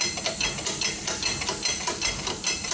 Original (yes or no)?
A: yes